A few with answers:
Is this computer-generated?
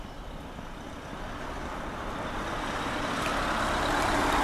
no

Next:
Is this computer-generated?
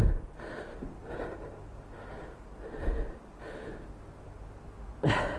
no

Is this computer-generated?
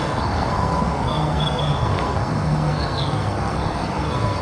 yes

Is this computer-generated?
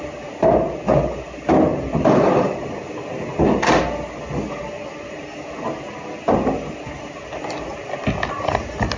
no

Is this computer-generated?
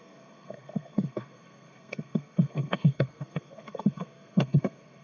yes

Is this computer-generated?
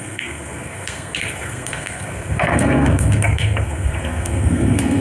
yes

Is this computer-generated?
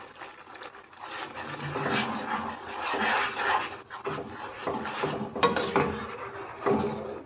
no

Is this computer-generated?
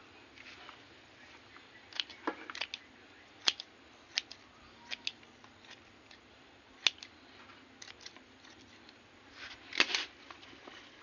no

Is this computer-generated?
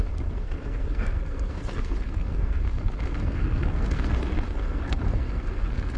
yes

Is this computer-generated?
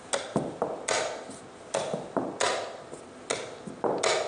no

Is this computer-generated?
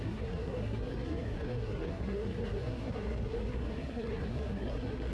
yes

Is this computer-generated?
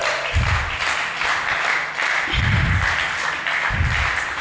no